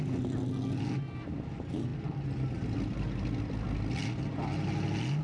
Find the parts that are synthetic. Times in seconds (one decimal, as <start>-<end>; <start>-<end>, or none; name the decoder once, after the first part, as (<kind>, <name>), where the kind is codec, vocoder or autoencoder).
none